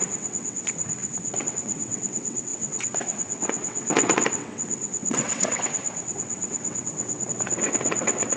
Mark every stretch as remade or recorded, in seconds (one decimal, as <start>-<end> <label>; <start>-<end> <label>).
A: 0.0-8.4 remade